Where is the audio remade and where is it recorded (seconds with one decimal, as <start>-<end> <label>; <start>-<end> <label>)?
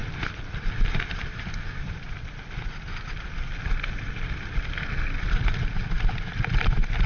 0.0-7.1 recorded